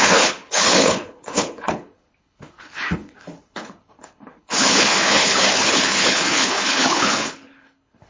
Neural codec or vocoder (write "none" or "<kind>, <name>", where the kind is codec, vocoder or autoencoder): codec, HILCodec